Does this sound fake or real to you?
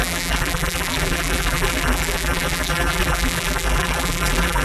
fake